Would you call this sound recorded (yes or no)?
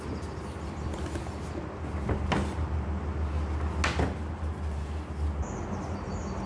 yes